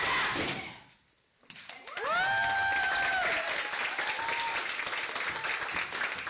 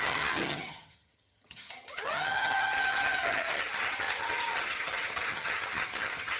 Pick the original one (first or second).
first